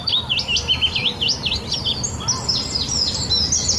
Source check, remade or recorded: recorded